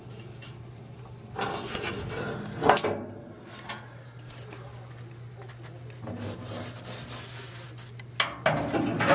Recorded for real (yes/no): yes